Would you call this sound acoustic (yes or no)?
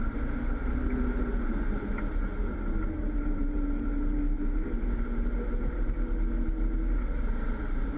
yes